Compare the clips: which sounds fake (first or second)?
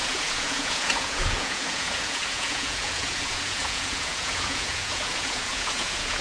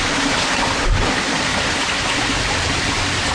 first